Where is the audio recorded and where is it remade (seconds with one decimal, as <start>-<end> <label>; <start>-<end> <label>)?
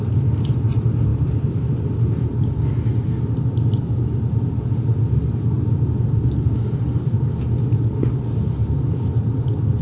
0.0-9.8 recorded